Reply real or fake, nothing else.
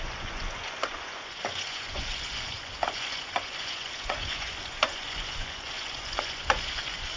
fake